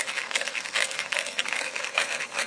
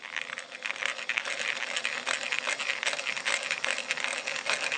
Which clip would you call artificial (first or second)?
first